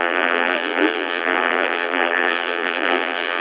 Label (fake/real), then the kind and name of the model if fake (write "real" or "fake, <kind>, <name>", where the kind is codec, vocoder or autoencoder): fake, vocoder, BigVGAN v2